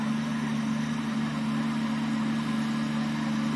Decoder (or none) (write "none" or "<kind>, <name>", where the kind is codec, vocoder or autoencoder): none